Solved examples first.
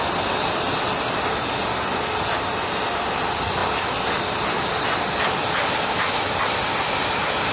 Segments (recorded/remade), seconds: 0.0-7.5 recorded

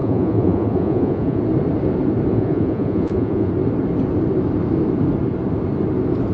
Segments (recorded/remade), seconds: 0.0-1.4 remade; 1.4-2.3 recorded; 2.3-3.5 remade; 3.5-6.3 recorded

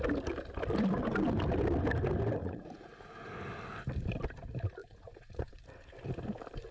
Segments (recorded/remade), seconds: 0.0-2.4 recorded; 2.4-3.0 remade; 3.0-4.8 recorded; 4.8-5.6 remade; 5.6-6.7 recorded

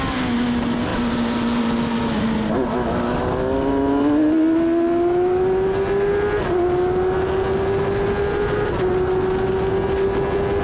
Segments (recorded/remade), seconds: 0.0-0.9 recorded; 0.9-2.0 remade; 2.0-10.6 recorded

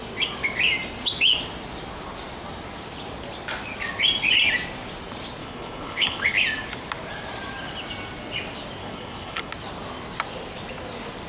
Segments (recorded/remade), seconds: 0.0-5.4 recorded; 5.4-6.4 remade; 6.4-8.8 recorded; 8.8-9.5 remade; 9.5-11.3 recorded

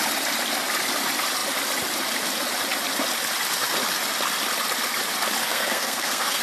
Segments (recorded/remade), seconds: 0.0-5.4 recorded; 5.4-6.4 remade